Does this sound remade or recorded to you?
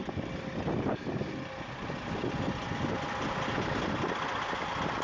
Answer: recorded